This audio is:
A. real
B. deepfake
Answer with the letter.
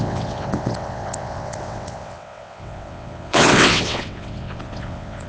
B